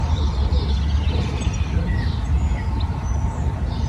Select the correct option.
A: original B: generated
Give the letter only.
A